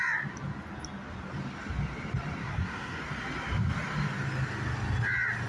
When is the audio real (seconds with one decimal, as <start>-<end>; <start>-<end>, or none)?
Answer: 0.0-2.4; 3.0-5.5